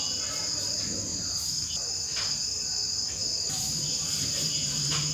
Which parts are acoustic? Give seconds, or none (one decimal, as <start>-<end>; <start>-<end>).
0.0-3.2